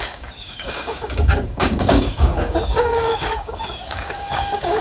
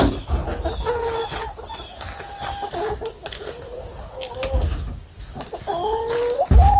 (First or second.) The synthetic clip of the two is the first